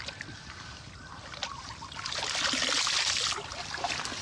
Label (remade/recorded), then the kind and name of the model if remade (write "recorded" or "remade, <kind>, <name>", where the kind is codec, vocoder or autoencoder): recorded